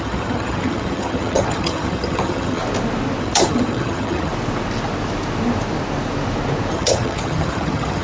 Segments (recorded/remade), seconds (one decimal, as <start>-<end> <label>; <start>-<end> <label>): 0.0-2.6 remade; 2.6-3.2 recorded; 3.2-4.3 remade; 4.3-6.7 recorded; 6.7-8.0 remade